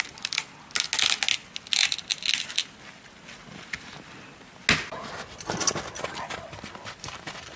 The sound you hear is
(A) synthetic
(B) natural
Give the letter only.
B